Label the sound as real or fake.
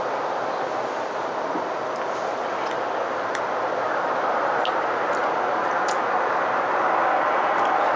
real